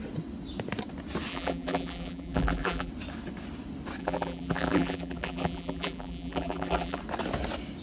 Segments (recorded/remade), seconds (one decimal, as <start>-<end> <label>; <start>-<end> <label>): 0.0-1.3 recorded; 1.3-2.9 remade; 2.9-4.0 recorded; 4.0-7.0 remade; 7.0-7.8 recorded